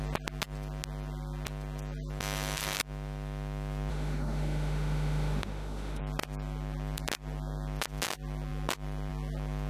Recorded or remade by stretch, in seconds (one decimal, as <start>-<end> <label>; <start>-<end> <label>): 0.0-3.9 recorded; 3.9-6.0 remade; 6.0-9.7 recorded